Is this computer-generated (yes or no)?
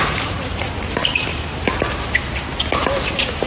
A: no